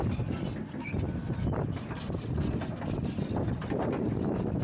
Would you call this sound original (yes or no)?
yes